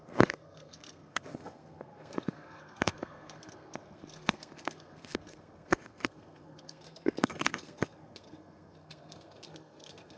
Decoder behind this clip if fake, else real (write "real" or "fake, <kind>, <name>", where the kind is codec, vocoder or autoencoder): fake, codec, SNAC